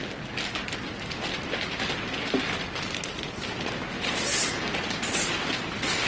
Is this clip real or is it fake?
real